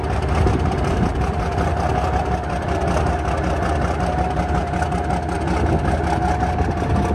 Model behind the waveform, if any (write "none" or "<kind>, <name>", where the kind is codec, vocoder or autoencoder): none